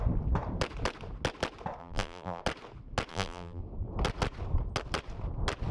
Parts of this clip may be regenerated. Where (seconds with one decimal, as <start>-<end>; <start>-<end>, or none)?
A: 1.8-2.4; 3.1-3.6